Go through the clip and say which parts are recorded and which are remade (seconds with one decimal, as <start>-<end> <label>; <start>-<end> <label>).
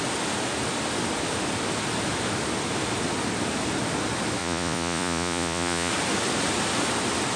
0.0-4.4 recorded; 4.4-5.9 remade; 5.9-7.4 recorded